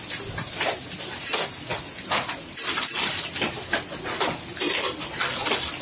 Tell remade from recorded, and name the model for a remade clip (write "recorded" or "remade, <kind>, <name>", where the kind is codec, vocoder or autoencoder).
recorded